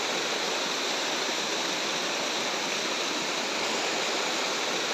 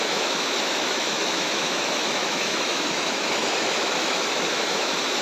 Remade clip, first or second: second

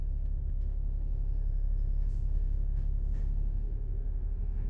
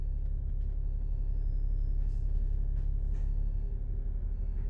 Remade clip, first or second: first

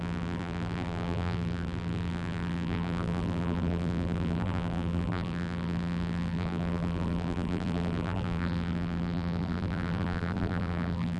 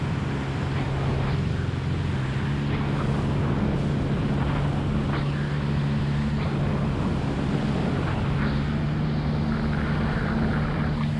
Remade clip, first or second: first